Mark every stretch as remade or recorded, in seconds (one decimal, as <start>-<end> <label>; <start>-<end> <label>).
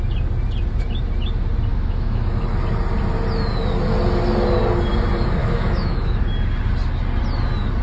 0.0-1.7 recorded; 1.7-2.4 remade; 2.4-5.4 recorded; 5.4-6.2 remade; 6.2-7.8 recorded